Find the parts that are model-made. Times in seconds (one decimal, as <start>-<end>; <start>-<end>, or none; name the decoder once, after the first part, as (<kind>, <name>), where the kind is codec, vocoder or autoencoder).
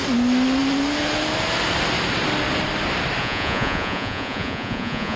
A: 3.2-5.2 (vocoder, Vocos)